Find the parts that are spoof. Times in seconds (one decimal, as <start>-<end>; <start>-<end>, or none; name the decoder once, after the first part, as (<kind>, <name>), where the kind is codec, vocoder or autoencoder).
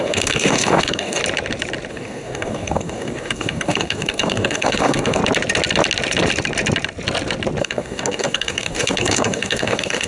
0.0-1.2 (codec, DAC); 1.9-5.2; 7.6-10.1